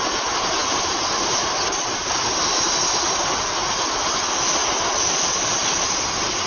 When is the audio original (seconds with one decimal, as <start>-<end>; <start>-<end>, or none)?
0.0-6.5